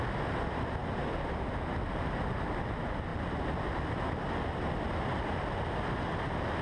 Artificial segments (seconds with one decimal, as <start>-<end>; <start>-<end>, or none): none